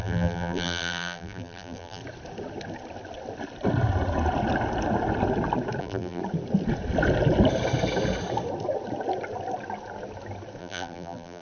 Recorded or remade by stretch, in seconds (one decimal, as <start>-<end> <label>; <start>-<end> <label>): 0.0-2.0 remade; 2.0-5.8 recorded; 5.8-6.2 remade; 6.2-10.6 recorded; 10.6-11.4 remade